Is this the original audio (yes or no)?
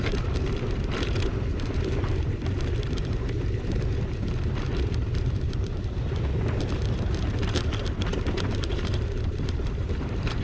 no